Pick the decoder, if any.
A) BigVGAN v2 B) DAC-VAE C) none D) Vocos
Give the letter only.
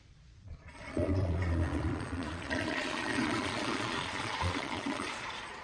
D